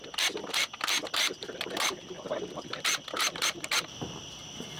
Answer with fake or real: real